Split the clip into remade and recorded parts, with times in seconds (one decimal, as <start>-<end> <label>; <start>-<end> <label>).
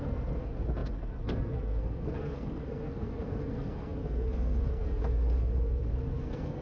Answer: 0.0-6.6 remade